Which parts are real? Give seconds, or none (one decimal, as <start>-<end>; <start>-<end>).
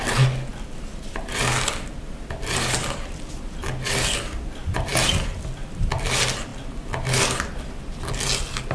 0.0-8.7